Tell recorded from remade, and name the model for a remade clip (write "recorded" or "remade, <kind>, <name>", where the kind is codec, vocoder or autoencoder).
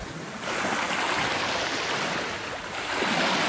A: recorded